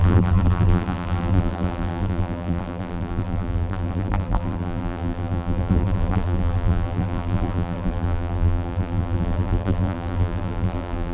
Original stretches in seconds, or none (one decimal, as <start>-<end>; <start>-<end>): none